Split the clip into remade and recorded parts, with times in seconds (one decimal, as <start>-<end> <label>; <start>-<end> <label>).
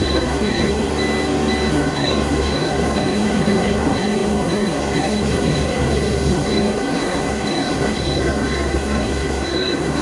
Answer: 0.0-0.9 remade; 0.9-1.7 recorded; 1.7-10.0 remade